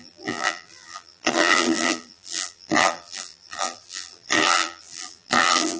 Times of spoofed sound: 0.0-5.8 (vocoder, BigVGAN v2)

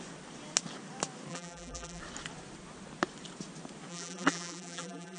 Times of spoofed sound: 1.3-2.0 (vocoder, BigVGAN v2); 3.9-5.2